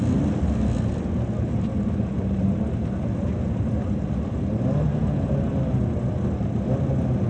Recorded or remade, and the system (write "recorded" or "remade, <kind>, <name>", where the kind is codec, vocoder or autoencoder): recorded